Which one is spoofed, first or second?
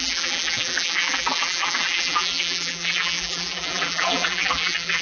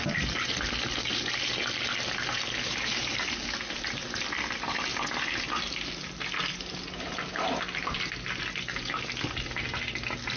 first